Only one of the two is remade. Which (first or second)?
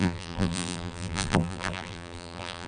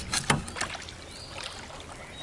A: first